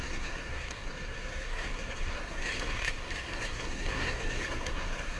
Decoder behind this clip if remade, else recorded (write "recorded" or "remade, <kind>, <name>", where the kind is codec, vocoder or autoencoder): remade, codec, SNAC